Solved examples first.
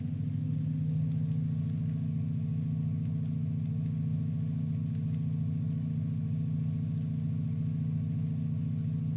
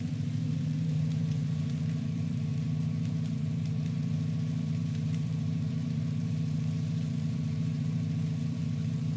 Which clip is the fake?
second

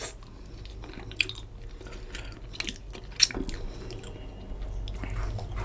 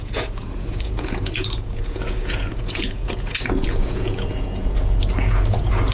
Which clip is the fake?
second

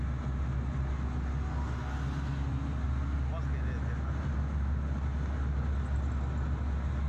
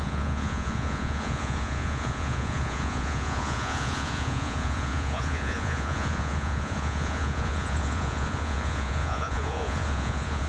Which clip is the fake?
second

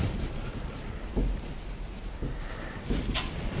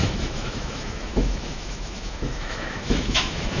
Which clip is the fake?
second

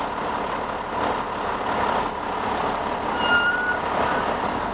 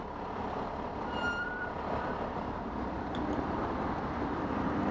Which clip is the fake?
second